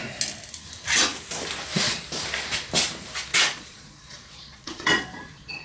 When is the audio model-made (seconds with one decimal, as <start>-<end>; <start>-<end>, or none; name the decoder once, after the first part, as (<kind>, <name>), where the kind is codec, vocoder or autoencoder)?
3.3-5.6 (vocoder, Vocos)